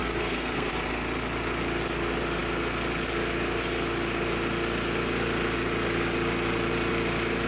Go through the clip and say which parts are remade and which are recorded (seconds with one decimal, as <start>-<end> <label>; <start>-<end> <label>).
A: 0.0-0.7 remade; 0.7-7.5 recorded